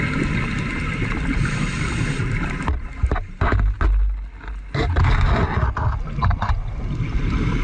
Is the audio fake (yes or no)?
no